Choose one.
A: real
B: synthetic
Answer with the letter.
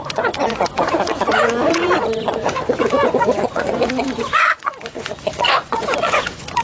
B